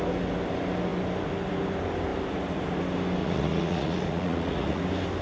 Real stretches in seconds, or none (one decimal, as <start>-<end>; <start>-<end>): 0.0-3.2; 4.8-5.2